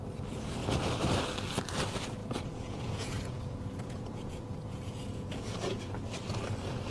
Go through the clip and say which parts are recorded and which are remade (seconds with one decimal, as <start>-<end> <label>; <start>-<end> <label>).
0.0-2.2 recorded; 2.2-5.8 remade; 5.8-6.9 recorded